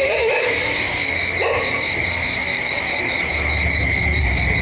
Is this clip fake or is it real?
fake